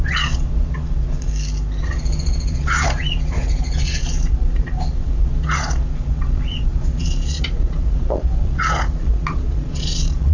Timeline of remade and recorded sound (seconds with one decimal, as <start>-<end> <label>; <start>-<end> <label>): 0.0-1.3 remade; 1.3-1.8 recorded; 1.8-10.3 remade